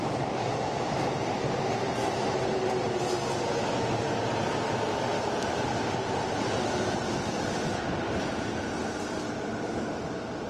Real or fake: real